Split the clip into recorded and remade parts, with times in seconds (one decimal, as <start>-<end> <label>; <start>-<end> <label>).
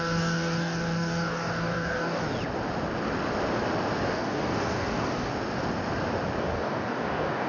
0.0-2.2 remade; 2.2-4.1 recorded; 4.1-5.3 remade; 5.3-6.4 recorded; 6.4-7.5 remade